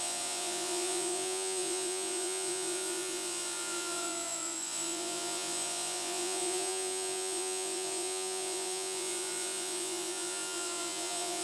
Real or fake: fake